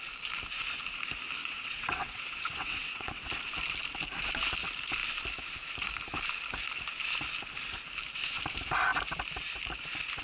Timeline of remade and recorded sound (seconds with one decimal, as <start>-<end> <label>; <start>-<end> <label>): 0.0-1.4 recorded; 1.4-3.3 remade; 3.3-10.2 recorded